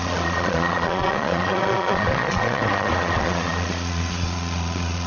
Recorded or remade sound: remade